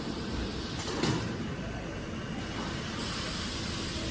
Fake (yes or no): no